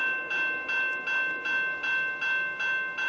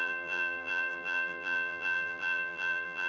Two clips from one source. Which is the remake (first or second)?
second